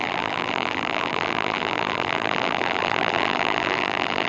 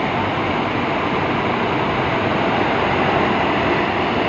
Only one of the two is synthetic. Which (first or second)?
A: first